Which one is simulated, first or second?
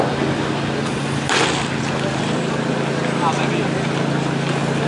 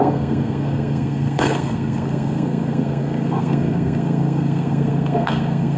second